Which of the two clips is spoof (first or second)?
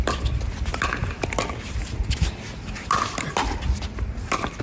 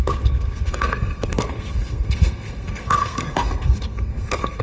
second